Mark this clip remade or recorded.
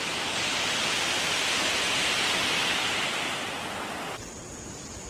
recorded